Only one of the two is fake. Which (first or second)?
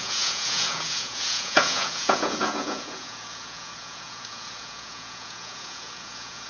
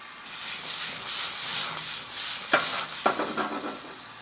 first